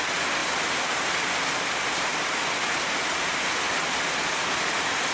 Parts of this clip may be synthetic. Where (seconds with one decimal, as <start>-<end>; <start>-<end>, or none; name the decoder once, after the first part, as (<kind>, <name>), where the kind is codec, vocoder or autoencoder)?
none